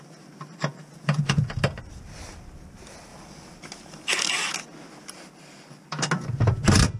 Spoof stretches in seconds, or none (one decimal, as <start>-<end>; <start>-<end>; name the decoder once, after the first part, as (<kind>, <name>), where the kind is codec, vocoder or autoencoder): 0.6-1.5 (vocoder, Vocos)